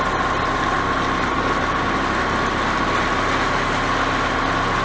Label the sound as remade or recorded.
recorded